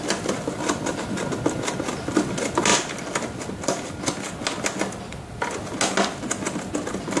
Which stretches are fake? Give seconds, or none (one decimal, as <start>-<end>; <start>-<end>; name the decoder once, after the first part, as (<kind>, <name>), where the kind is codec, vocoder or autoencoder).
none